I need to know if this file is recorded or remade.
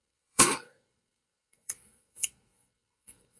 remade